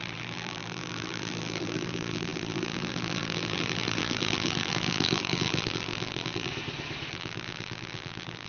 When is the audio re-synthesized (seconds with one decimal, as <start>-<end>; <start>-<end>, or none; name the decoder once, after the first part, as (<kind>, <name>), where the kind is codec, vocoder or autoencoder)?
0.0-6.5 (vocoder, BigVGAN v2); 7.1-8.5